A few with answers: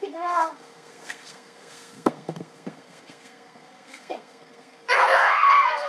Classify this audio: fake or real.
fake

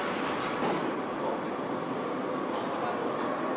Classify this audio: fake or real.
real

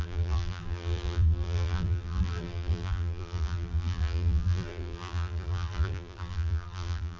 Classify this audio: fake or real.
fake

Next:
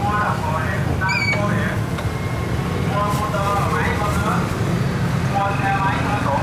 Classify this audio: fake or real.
real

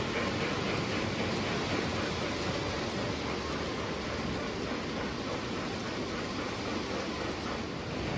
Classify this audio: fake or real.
real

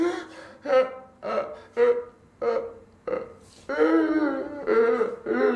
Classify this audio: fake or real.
real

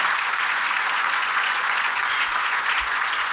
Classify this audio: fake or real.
fake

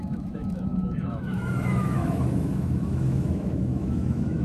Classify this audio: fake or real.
fake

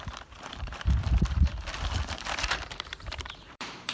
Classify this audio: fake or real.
fake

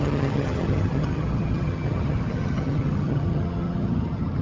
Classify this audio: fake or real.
fake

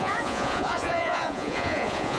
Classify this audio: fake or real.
fake